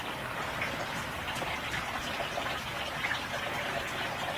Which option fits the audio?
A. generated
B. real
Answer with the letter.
B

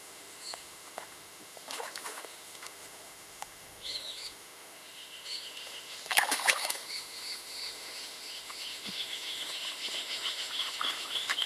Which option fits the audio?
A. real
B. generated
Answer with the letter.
B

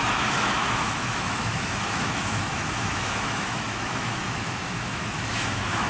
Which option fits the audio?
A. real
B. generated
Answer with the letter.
B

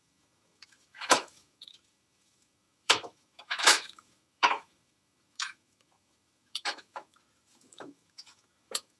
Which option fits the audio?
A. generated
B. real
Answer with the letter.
A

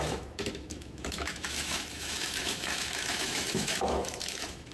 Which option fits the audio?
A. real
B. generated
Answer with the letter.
B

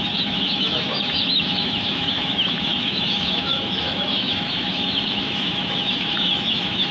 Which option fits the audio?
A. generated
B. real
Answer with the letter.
A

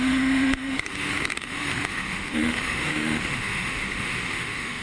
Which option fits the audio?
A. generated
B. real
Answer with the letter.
A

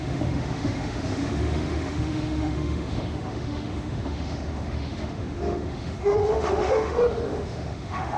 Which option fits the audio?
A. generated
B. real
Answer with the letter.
A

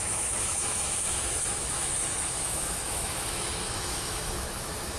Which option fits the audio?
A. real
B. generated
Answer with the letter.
B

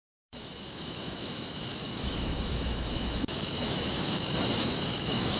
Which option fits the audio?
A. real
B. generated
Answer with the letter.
B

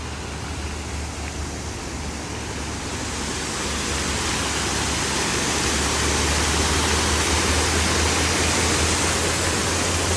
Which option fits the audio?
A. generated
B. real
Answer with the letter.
B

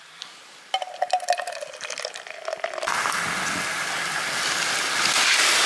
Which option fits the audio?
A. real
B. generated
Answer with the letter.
A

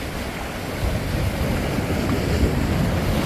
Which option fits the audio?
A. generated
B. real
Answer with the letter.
B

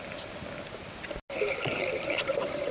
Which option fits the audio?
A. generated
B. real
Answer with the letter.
B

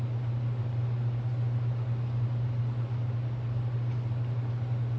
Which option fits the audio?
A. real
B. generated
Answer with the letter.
A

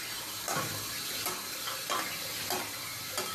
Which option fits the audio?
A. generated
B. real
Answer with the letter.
B